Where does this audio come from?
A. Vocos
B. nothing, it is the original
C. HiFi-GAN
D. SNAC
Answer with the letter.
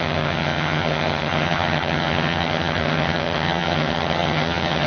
C